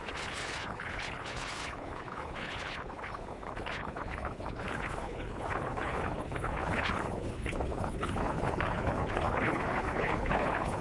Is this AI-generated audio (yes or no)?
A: yes